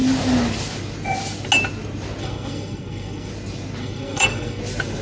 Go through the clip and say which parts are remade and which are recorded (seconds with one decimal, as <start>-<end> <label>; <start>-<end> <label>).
0.0-2.2 recorded; 2.2-3.3 remade; 3.3-3.8 recorded; 3.8-4.6 remade; 4.6-5.0 recorded